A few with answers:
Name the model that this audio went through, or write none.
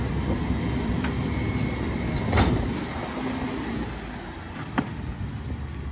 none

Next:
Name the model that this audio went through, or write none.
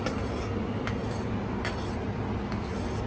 none